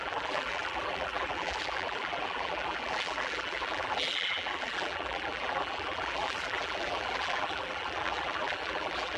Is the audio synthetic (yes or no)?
yes